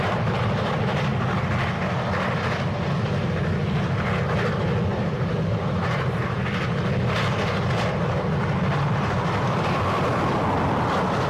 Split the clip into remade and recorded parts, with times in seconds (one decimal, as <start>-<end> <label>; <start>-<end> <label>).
0.0-1.1 remade; 1.1-5.0 recorded; 5.0-6.4 remade; 6.4-11.3 recorded

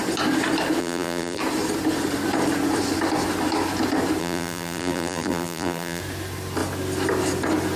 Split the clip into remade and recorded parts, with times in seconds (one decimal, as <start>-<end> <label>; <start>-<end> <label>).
0.0-0.8 recorded; 0.8-1.4 remade; 1.4-4.2 recorded; 4.2-6.0 remade; 6.0-7.8 recorded

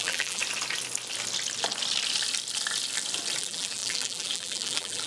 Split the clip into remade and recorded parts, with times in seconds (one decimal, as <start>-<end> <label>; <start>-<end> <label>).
0.0-0.4 remade; 0.4-3.4 recorded; 3.4-5.1 remade

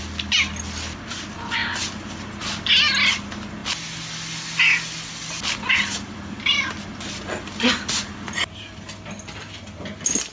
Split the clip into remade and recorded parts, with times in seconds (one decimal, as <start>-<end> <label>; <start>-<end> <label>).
0.0-10.3 recorded

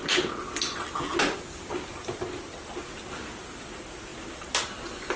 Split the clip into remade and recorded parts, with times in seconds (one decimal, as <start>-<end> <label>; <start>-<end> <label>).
0.0-5.2 recorded